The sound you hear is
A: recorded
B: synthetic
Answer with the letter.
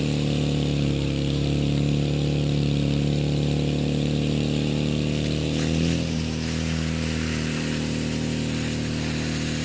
B